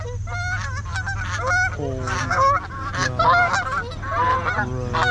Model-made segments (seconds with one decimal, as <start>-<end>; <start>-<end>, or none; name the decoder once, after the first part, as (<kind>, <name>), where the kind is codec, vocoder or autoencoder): none